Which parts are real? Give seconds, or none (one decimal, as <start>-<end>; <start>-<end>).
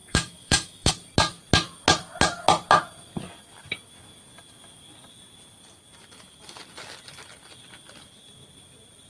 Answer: 0.9-9.1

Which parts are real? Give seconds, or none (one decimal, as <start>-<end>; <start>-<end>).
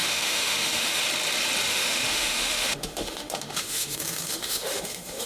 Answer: 1.0-1.7